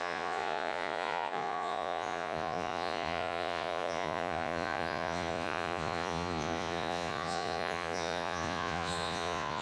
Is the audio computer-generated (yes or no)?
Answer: yes